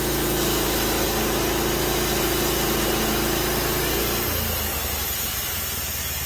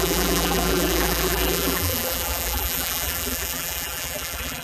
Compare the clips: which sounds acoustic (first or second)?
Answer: first